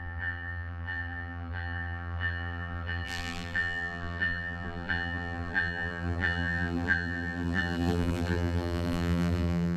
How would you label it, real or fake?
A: fake